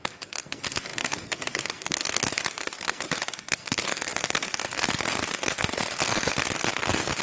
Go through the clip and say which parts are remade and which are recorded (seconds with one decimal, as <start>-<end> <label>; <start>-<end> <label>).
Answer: 0.0-7.2 remade